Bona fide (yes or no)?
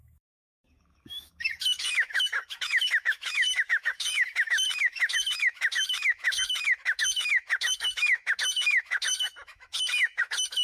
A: no